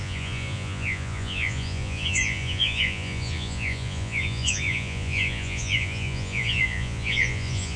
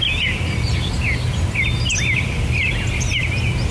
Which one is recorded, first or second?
second